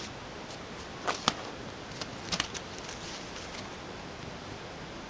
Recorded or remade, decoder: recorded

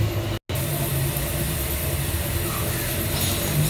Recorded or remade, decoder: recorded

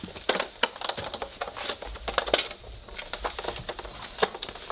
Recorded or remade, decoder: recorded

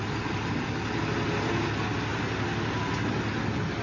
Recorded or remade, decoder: recorded